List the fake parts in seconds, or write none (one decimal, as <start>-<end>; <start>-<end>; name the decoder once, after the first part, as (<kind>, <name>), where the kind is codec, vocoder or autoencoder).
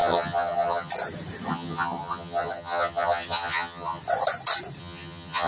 0.0-0.9 (vocoder, HiFi-GAN); 1.5-4.0; 4.8-5.5